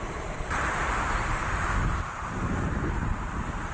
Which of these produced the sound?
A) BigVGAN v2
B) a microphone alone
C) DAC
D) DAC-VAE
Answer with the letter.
A